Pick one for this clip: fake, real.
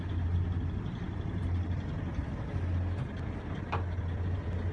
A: real